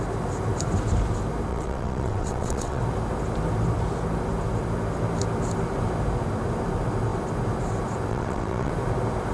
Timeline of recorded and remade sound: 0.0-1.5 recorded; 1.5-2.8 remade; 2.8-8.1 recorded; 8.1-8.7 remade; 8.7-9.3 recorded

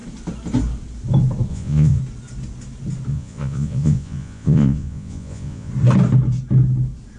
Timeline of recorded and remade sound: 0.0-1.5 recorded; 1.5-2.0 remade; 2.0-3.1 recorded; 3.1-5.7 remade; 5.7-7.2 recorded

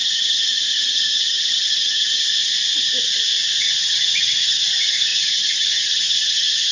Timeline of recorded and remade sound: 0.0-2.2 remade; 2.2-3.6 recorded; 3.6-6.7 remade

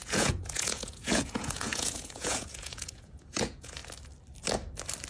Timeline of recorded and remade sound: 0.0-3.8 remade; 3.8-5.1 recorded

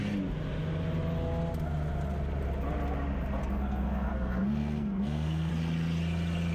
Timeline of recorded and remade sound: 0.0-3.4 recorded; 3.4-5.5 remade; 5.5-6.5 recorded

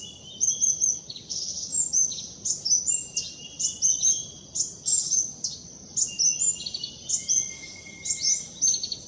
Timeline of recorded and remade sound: 0.0-9.1 recorded